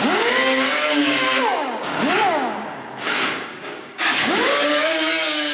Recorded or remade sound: remade